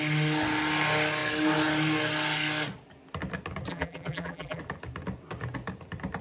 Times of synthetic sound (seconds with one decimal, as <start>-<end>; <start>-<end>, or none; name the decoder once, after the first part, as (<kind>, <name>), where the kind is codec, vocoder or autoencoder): 3.7-4.6 (vocoder, BigVGAN v2)